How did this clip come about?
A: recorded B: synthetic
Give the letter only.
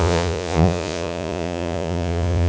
B